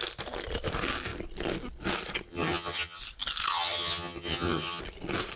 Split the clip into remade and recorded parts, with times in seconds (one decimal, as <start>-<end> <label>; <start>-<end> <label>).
0.0-2.3 recorded; 2.3-3.0 remade; 3.0-3.5 recorded; 3.5-4.8 remade; 4.8-5.4 recorded

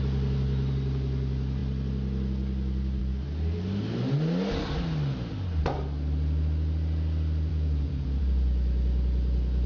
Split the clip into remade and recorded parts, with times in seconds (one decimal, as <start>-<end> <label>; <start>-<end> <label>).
0.0-7.5 recorded; 7.5-8.2 remade; 8.2-9.7 recorded